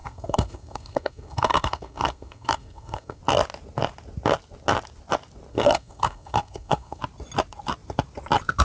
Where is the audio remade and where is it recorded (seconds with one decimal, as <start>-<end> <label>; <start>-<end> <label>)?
0.0-3.2 remade; 3.2-5.5 recorded; 5.5-7.0 remade; 7.0-8.6 recorded